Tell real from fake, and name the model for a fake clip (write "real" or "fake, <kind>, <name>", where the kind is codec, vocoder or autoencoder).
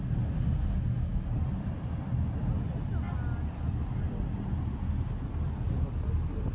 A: real